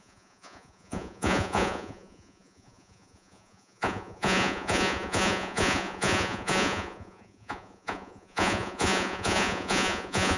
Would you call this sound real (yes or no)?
no